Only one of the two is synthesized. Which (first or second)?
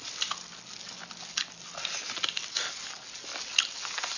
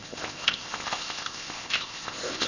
second